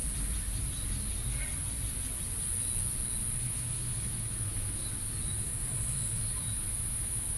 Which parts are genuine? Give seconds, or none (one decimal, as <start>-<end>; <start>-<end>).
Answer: 0.0-3.4; 4.8-5.4